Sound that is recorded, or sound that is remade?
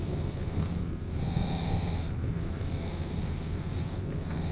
remade